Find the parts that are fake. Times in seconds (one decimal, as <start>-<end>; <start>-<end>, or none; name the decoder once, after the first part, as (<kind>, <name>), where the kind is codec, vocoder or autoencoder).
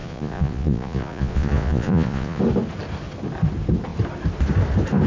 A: 0.0-2.4 (vocoder, Vocos)